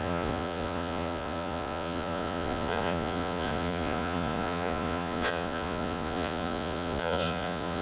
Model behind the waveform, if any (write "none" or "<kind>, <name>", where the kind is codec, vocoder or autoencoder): vocoder, Vocos